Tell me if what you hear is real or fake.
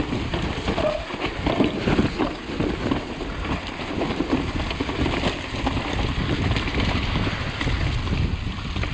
real